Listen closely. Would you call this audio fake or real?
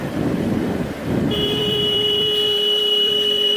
fake